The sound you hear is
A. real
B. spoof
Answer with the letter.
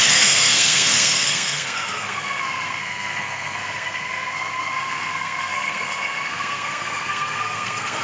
B